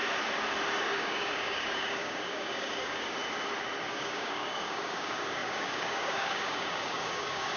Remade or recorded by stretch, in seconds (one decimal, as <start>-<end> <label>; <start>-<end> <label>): 0.0-0.8 recorded; 0.8-3.2 remade; 3.2-3.8 recorded; 3.8-7.6 remade